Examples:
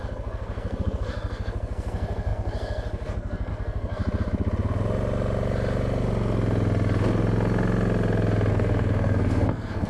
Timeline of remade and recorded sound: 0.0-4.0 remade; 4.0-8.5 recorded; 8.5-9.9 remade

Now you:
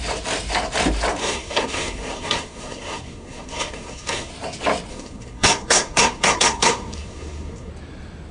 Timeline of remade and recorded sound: 0.0-1.2 recorded; 1.2-4.3 remade; 4.3-4.9 recorded; 4.9-7.7 remade; 7.7-8.3 recorded

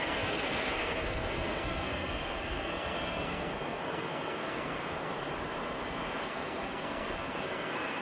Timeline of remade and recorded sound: 0.0-5.1 remade; 5.1-6.2 recorded; 6.2-8.0 remade

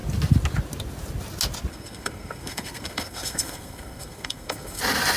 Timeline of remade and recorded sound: 0.0-1.7 recorded; 1.7-4.8 remade; 4.8-5.2 recorded

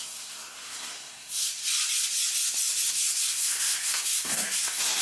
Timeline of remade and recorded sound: 0.0-1.6 remade; 1.6-2.9 recorded; 2.9-5.0 remade

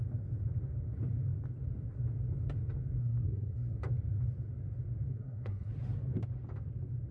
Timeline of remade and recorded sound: 0.0-3.0 recorded; 3.0-3.8 remade; 3.8-5.1 recorded; 5.1-5.7 remade; 5.7-7.1 recorded

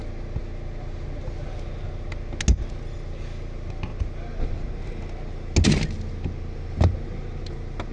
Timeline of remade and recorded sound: 0.0-7.9 recorded

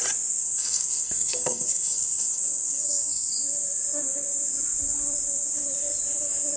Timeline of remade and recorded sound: 0.0-0.4 recorded; 0.4-3.3 remade; 3.3-6.6 recorded